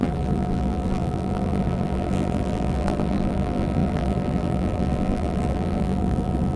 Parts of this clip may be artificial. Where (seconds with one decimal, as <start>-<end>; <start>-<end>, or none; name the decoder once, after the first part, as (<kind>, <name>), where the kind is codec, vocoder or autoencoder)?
0.0-6.6 (vocoder, BigVGAN v2)